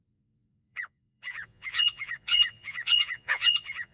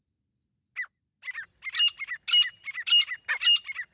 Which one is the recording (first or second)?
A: second